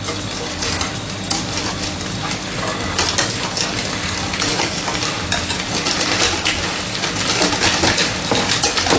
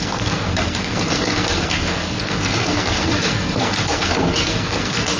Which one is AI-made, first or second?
second